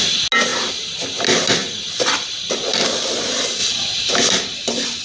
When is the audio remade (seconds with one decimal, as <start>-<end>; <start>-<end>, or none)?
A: none